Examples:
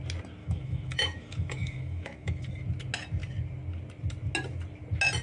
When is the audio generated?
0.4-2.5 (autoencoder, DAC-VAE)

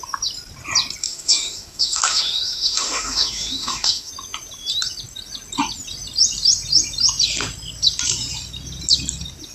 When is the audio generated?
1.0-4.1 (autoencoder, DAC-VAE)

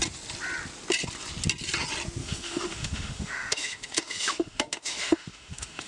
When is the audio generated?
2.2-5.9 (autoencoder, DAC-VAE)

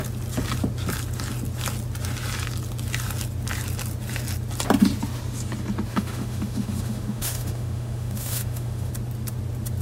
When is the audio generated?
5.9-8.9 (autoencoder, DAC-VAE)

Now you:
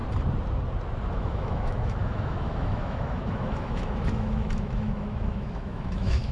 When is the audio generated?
1.1-6.3 (autoencoder, DAC-VAE)

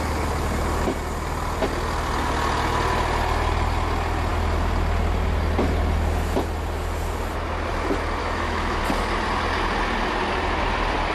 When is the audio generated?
8.2-8.8 (autoencoder, DAC-VAE)

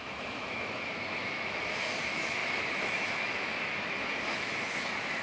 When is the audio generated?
0.0-5.2 (autoencoder, DAC-VAE)